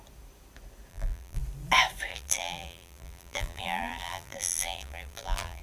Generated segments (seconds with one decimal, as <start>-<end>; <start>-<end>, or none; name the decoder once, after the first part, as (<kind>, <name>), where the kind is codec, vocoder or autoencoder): 0.9-1.4 (vocoder, BigVGAN v2); 2.1-5.6